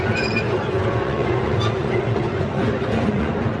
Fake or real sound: fake